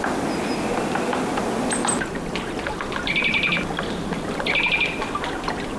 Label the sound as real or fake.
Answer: real